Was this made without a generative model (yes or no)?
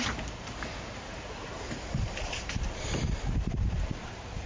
no